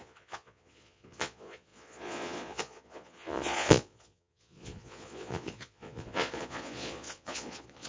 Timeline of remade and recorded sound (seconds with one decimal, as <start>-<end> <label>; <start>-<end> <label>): 0.0-7.9 remade